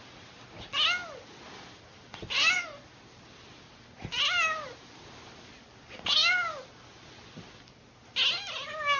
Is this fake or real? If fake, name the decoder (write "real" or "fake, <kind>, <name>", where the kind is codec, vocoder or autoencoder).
real